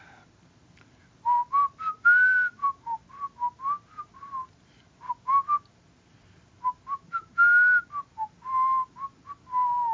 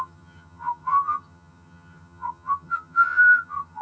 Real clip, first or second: first